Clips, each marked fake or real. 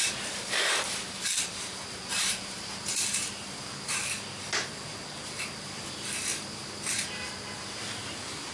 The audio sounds fake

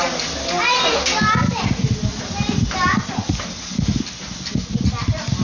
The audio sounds real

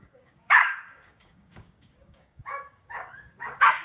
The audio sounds fake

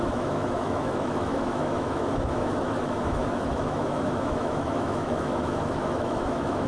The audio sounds fake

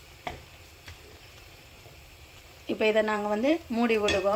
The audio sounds fake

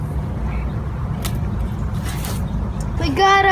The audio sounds real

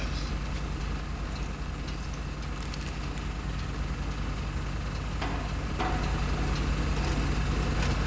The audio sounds real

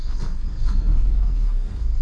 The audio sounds fake